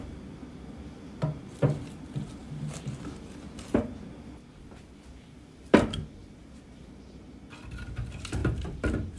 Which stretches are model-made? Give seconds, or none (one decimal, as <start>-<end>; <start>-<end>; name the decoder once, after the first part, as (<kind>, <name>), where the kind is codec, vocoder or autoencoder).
8.4-9.2 (vocoder, BigVGAN v2)